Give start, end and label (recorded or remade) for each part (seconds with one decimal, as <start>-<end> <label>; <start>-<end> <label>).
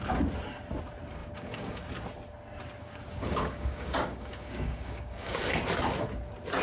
0.0-1.2 recorded; 1.2-1.8 remade; 1.8-2.8 recorded; 2.8-5.5 remade; 5.5-6.6 recorded